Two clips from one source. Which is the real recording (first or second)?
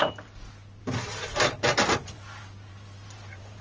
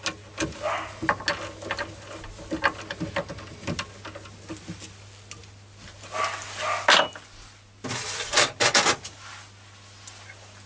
second